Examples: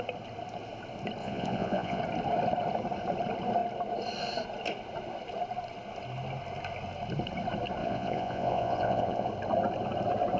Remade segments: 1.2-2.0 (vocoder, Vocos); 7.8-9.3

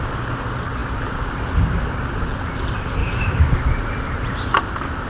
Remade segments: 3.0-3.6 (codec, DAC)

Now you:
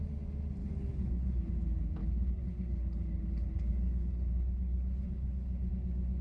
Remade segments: 0.6-1.5 (codec, HILCodec); 2.0-5.7